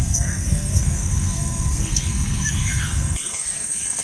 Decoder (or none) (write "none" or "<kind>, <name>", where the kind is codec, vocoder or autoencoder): codec, SNAC